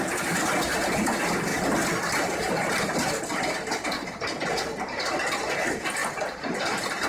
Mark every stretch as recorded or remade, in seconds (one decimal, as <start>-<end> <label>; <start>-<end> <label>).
0.0-7.1 recorded

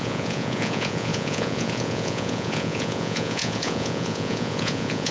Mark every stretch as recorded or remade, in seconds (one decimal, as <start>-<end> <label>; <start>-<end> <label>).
0.0-5.1 remade

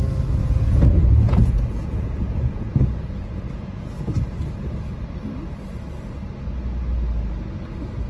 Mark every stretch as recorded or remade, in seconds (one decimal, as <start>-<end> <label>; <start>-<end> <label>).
0.0-0.4 recorded; 0.4-3.8 remade; 3.8-8.1 recorded

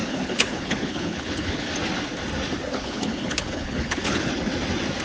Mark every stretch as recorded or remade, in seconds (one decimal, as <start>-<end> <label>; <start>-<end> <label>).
0.0-1.7 remade; 1.7-2.7 recorded; 2.7-4.3 remade; 4.3-5.0 recorded

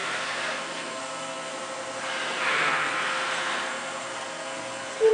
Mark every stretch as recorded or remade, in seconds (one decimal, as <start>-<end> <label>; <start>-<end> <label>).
0.0-1.5 remade; 1.5-2.5 recorded; 2.5-5.1 remade

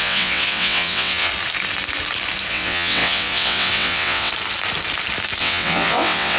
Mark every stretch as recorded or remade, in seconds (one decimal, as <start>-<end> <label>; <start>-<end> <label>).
0.0-1.3 remade; 1.3-2.5 recorded; 2.5-4.3 remade; 4.3-5.4 recorded; 5.4-6.4 remade